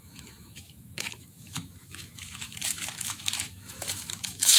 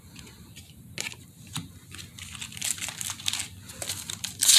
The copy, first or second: first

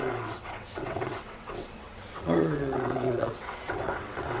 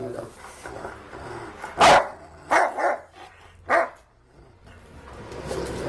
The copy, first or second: first